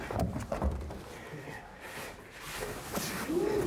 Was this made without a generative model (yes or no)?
yes